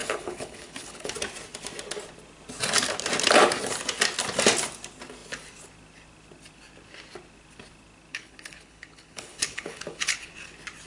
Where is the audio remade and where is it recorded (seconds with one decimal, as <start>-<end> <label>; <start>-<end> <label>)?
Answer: 0.0-1.1 remade; 1.1-8.1 recorded; 8.1-10.3 remade; 10.3-10.9 recorded